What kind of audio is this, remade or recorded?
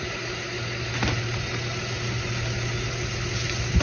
recorded